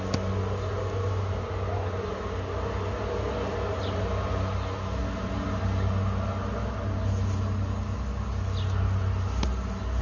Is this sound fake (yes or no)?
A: no